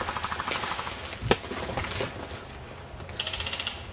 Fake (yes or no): no